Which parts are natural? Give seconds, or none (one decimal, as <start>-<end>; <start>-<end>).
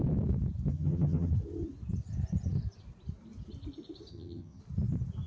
0.0-0.7; 1.3-4.1; 4.6-5.3